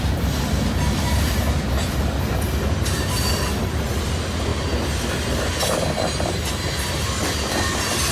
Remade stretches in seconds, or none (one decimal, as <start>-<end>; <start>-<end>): none